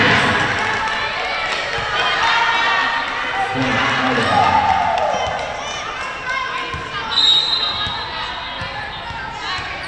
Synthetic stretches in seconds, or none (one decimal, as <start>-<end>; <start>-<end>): none